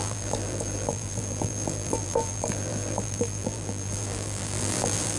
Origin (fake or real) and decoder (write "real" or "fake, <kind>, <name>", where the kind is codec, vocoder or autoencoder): fake, vocoder, BigVGAN v2